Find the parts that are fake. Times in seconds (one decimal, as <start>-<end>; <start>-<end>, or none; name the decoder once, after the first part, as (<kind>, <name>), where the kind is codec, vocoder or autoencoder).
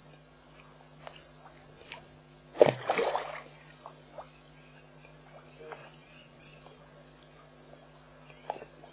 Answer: 5.8-6.4 (vocoder, Vocos)